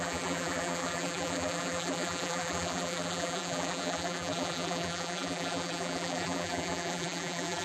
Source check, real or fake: fake